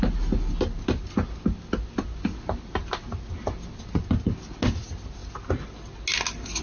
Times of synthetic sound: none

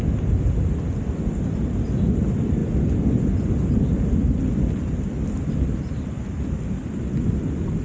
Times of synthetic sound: none

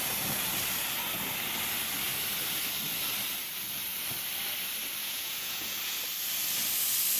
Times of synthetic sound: 5.0-5.8 (vocoder, Vocos)